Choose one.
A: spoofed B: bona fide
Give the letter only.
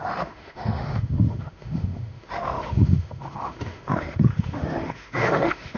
A